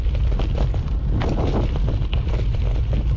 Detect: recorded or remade recorded